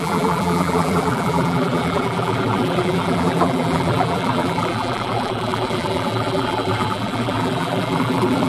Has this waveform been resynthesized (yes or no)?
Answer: yes